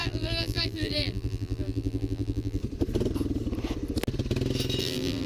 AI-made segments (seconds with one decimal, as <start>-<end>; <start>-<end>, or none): 0.0-2.6; 4.8-5.3